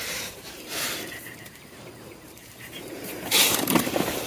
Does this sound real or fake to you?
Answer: fake